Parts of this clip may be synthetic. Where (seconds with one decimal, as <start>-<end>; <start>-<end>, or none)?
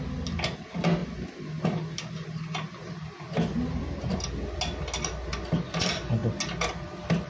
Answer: none